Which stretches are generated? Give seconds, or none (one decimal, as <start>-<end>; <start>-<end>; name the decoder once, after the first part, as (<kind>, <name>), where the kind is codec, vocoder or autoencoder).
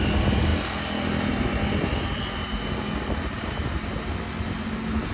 none